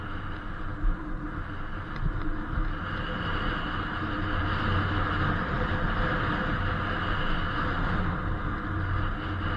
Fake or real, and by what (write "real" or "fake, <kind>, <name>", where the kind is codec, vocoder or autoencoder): real